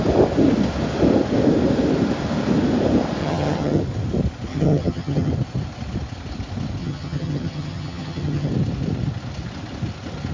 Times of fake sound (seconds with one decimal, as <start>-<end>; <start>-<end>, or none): 3.2-3.8; 4.5-5.3; 6.8-8.5